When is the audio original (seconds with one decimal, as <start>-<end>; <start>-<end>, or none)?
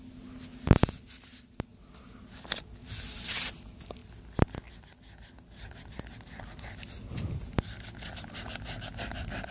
0.0-9.5